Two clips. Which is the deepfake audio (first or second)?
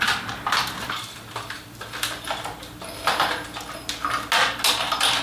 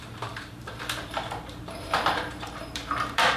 second